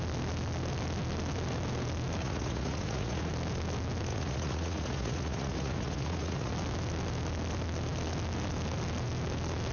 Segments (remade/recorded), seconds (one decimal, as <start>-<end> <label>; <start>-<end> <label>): 0.0-2.2 recorded; 2.2-3.3 remade; 3.3-4.1 recorded; 4.1-6.5 remade; 6.5-9.7 recorded